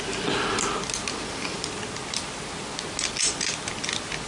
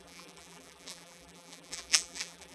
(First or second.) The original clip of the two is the first